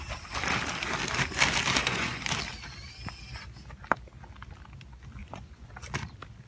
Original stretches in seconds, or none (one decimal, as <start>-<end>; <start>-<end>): 0.0-1.8; 2.3-5.2; 5.7-6.5